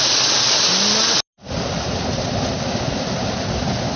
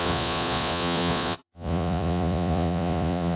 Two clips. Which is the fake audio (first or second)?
second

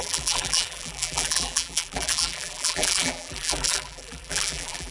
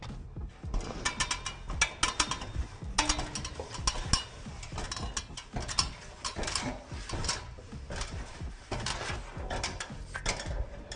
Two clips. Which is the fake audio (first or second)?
first